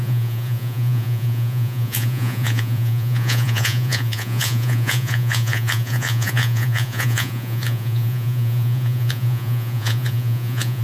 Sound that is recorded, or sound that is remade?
remade